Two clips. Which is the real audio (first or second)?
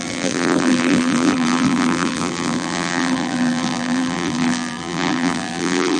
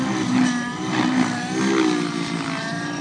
second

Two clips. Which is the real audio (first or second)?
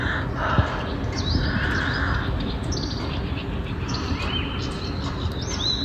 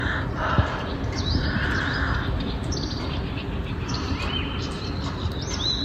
first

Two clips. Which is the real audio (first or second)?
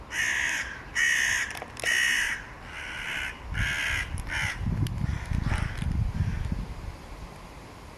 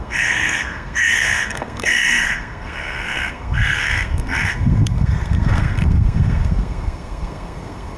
first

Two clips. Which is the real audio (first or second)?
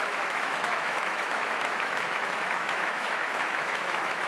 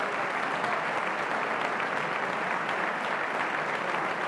second